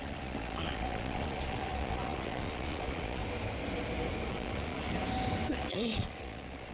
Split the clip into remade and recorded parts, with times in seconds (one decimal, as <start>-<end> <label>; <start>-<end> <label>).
0.0-3.2 remade; 3.2-4.3 recorded; 4.3-4.9 remade; 4.9-5.5 recorded; 5.5-6.7 remade